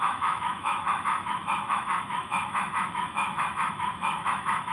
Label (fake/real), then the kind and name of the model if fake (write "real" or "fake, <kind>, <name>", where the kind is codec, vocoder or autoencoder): fake, autoencoder, DAC-VAE